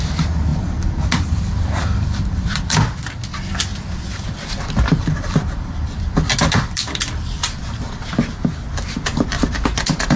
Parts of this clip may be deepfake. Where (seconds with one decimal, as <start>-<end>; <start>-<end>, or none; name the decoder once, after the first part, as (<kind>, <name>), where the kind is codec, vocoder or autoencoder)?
0.5-2.6 (vocoder, BigVGAN v2); 3.7-8.0